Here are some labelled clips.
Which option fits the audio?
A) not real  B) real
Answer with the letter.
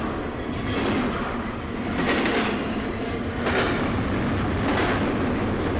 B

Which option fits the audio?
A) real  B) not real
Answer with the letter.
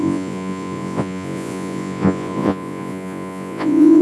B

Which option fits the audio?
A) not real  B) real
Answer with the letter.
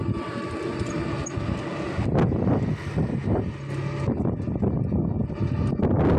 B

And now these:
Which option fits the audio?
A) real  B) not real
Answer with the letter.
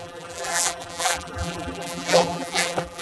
B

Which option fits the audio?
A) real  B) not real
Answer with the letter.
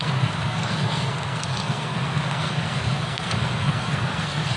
B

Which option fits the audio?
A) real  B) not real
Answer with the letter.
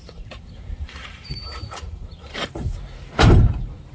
B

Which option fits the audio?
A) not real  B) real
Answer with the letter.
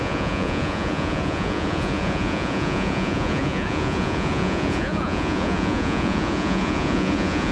A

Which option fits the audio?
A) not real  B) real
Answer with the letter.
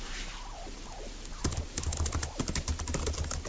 B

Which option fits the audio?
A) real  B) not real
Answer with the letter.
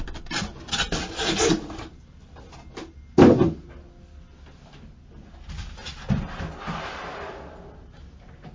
A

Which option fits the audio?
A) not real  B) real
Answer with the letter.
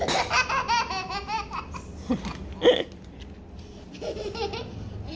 B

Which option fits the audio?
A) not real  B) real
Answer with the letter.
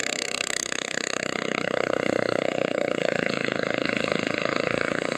A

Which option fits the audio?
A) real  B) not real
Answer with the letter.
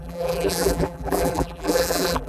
B